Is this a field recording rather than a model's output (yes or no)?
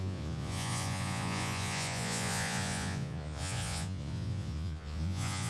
no